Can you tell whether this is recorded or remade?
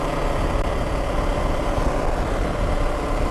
recorded